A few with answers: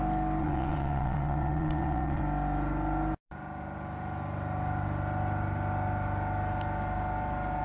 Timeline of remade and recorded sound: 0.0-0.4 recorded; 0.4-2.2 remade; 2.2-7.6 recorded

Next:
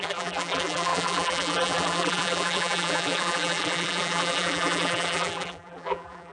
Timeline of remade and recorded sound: 0.0-6.3 remade

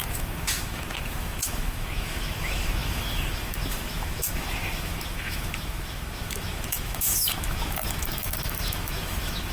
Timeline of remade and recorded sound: 0.0-9.5 remade

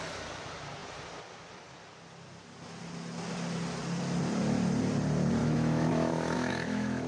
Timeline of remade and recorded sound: 0.0-5.4 recorded; 5.4-7.1 remade

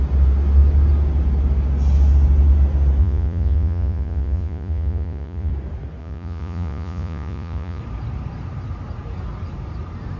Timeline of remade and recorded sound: 0.0-3.0 recorded; 3.0-5.5 remade; 5.5-6.0 recorded; 6.0-7.8 remade; 7.8-10.2 recorded

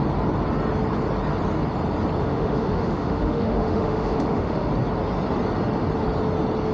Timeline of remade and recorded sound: 0.0-2.2 recorded; 2.2-4.7 remade; 4.7-6.7 recorded

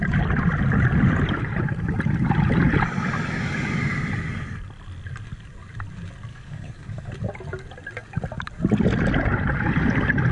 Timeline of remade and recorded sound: 0.0-6.3 recorded; 6.3-7.1 remade; 7.1-10.3 recorded